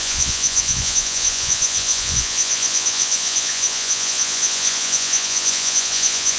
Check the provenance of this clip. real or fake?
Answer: fake